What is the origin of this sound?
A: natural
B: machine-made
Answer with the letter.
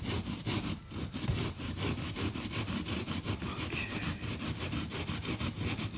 A